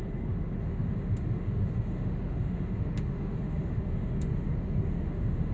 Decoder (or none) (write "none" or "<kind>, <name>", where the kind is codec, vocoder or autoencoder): autoencoder, DAC-VAE